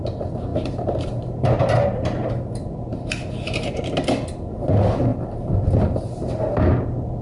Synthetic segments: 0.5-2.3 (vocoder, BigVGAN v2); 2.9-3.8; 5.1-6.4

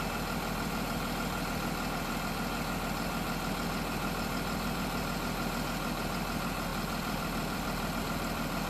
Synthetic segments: 6.7-8.0 (vocoder, BigVGAN v2)